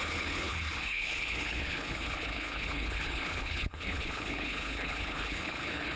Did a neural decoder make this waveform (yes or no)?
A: yes